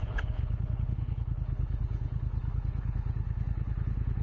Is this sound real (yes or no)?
no